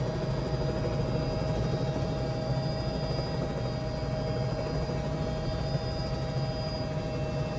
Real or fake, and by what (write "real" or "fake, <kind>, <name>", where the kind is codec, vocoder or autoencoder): real